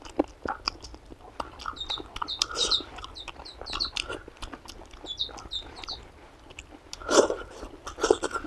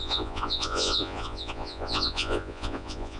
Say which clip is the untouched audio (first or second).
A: first